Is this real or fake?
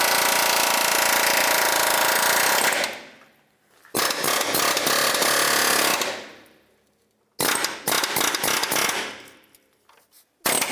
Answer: real